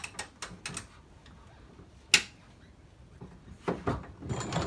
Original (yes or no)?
yes